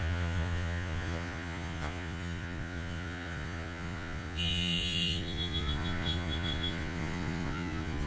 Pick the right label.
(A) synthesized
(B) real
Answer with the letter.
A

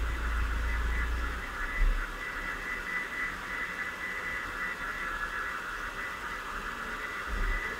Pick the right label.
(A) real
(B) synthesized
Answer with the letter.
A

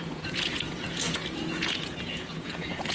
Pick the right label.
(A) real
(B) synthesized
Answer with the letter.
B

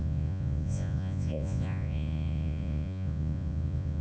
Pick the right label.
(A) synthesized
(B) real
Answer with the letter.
A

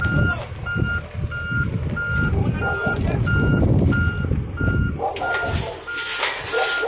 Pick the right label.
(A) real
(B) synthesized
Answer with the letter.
A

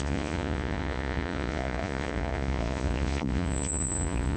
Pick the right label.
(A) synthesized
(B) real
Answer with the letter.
A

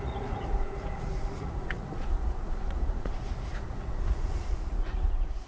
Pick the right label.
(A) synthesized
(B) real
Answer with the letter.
A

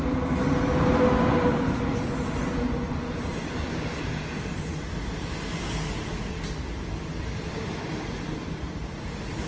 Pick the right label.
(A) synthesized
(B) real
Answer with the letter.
B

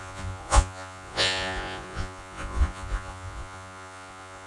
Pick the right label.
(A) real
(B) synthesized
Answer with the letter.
B